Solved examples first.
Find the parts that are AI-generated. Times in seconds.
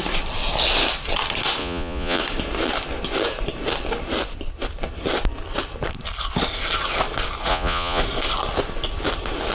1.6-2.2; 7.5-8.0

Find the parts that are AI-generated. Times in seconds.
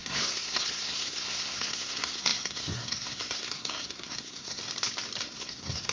0.0-4.6; 5.2-5.9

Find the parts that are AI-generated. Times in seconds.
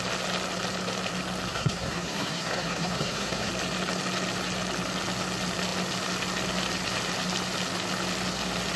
1.5-3.5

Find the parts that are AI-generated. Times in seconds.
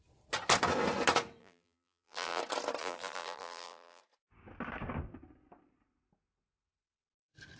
1.4-2.4; 2.8-4.0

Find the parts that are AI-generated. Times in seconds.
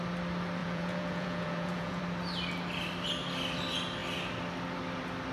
0.6-2.0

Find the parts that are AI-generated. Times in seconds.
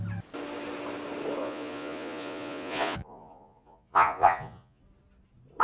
1.4-4.8